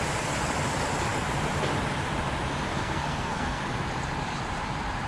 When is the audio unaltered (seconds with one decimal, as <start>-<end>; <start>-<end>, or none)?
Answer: 0.0-2.7; 3.6-5.1